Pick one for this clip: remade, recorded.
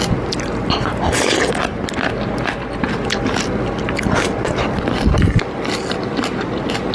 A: recorded